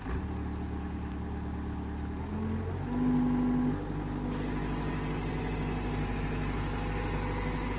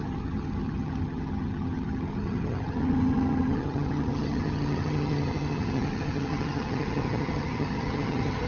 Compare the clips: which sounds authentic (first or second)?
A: first